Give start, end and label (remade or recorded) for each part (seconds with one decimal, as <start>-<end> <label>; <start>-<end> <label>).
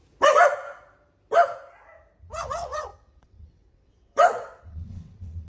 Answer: 0.0-2.4 recorded; 2.4-5.5 remade